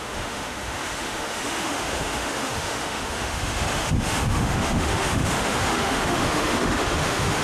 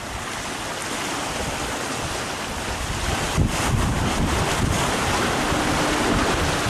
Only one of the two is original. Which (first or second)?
second